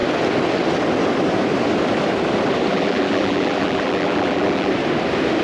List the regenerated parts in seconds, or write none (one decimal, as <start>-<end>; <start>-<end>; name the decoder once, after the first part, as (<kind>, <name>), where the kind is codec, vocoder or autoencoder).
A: 2.7-4.7 (vocoder, BigVGAN v2)